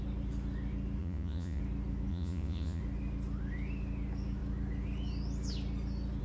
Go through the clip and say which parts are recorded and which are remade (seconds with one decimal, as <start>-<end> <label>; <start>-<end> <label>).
0.0-1.0 recorded; 1.0-1.6 remade; 1.6-2.1 recorded; 2.1-2.8 remade; 2.8-6.2 recorded

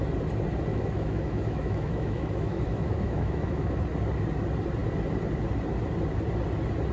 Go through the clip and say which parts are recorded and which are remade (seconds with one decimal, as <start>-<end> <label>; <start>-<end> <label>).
0.0-0.7 recorded; 0.7-3.8 remade; 3.8-6.9 recorded

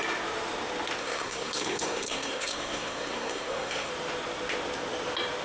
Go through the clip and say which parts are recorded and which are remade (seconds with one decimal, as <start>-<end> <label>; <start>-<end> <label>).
0.0-1.0 recorded; 1.0-3.9 remade; 3.9-5.4 recorded

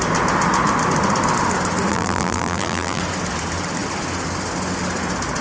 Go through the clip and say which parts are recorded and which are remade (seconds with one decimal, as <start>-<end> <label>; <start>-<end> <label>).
0.0-1.9 recorded; 1.9-3.0 remade; 3.0-5.4 recorded

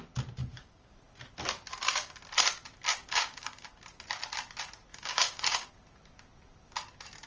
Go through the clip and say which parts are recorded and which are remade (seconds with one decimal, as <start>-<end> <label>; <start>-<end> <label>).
0.0-0.4 recorded; 0.4-0.9 remade; 0.9-2.9 recorded; 2.9-3.8 remade; 3.8-4.9 recorded; 4.9-5.7 remade; 5.7-7.3 recorded

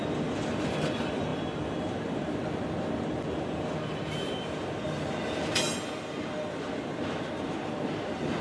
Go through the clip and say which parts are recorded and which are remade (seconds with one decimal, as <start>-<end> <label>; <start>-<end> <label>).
0.0-8.4 recorded

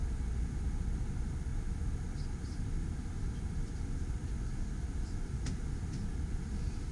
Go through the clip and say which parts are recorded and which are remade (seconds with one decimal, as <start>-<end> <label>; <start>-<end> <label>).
0.0-6.9 recorded

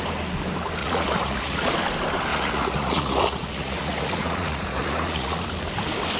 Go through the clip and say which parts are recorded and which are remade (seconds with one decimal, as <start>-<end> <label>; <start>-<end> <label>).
0.0-0.8 recorded; 0.8-1.7 remade; 1.7-2.3 recorded; 2.3-5.5 remade; 5.5-6.2 recorded